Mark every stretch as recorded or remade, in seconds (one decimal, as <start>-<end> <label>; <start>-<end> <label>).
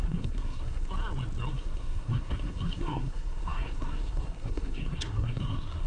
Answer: 0.0-0.9 remade; 0.9-1.5 recorded; 1.5-5.9 remade